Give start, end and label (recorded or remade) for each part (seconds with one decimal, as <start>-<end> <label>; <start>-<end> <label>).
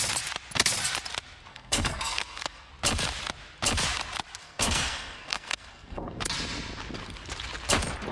0.0-1.5 recorded; 1.5-2.7 remade; 2.7-4.4 recorded; 4.4-6.2 remade; 6.2-8.1 recorded